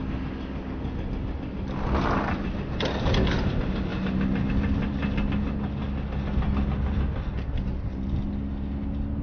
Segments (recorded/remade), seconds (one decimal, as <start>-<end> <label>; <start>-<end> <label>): 0.0-9.2 recorded